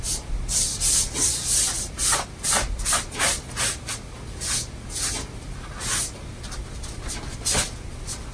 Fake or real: real